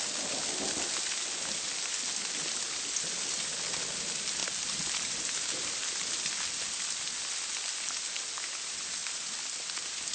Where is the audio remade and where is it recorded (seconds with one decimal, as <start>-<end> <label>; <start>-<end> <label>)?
0.0-4.4 recorded; 4.4-5.5 remade; 5.5-9.0 recorded; 9.0-10.1 remade